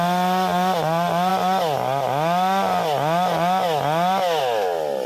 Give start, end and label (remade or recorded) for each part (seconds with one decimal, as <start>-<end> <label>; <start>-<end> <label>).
0.0-5.1 recorded